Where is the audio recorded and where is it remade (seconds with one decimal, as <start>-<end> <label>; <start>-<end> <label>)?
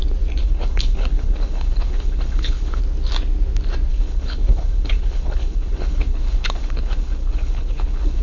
0.0-0.4 recorded; 0.4-2.8 remade; 2.8-3.9 recorded; 3.9-8.2 remade